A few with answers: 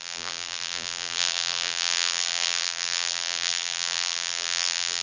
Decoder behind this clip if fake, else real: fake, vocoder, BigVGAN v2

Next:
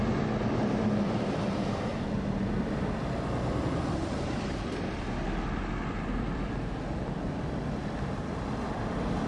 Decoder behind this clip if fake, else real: fake, vocoder, BigVGAN v2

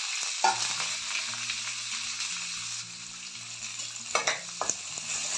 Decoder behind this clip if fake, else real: real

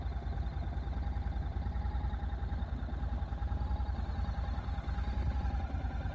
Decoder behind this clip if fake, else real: real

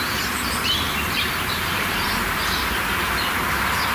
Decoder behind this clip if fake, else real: fake, vocoder, BigVGAN v2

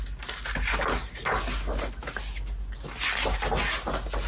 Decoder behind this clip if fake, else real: real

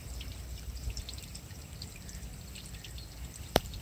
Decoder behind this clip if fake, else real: fake, vocoder, BigVGAN v2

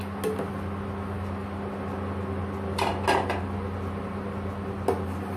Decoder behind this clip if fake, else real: real